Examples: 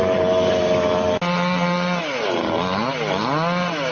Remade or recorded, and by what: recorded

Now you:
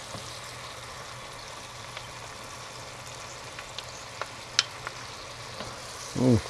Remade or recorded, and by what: recorded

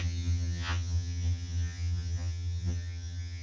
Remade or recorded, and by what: remade, vocoder, HiFi-GAN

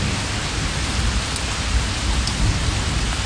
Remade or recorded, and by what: recorded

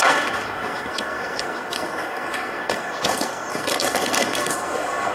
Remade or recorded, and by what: remade, codec, SNAC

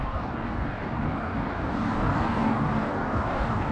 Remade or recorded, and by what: remade, codec, DAC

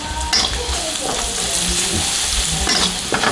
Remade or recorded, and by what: recorded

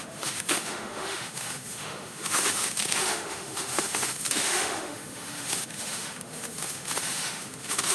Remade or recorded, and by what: remade, autoencoder, DAC-VAE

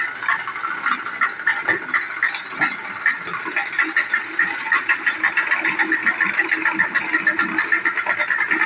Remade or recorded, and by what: recorded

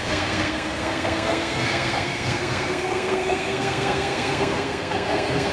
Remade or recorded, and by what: remade, codec, SNAC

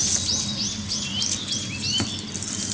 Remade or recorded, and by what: recorded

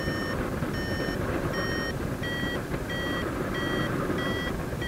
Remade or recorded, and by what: recorded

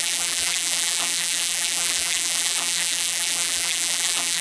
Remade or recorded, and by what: remade, vocoder, BigVGAN v2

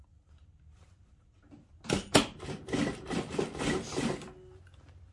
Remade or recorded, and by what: recorded